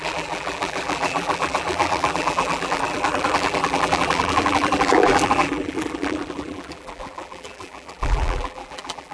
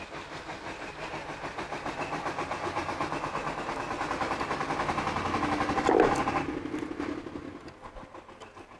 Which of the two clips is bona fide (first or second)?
second